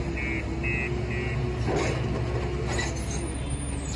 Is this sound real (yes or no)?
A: yes